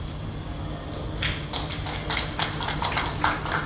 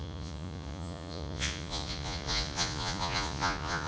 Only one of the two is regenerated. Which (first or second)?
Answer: second